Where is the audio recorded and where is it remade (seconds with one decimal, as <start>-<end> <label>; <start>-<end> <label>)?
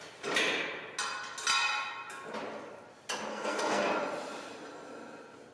0.0-3.3 recorded; 3.3-3.9 remade; 3.9-5.5 recorded